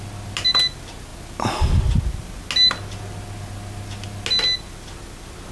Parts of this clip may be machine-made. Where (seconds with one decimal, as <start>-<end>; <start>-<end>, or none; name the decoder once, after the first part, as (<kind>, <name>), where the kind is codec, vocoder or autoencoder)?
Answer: none